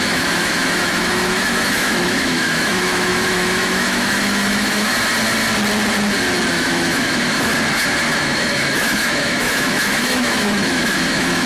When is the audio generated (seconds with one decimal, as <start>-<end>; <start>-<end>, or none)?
0.0-4.9; 6.5-7.5; 8.2-11.5